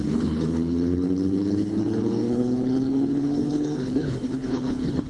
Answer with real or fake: fake